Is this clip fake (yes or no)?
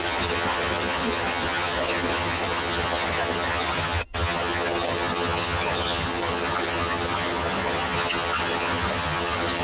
yes